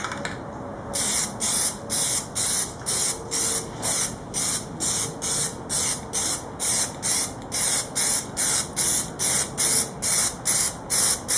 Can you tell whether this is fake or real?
real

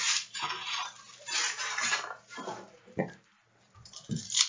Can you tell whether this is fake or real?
fake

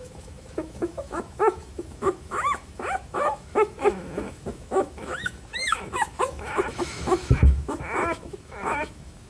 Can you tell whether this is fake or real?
fake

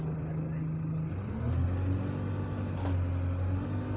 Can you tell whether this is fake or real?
real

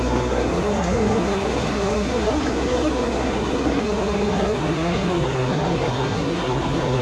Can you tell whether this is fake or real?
fake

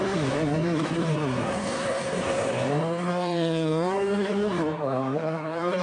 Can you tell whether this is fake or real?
fake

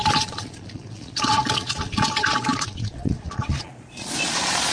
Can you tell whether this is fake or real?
fake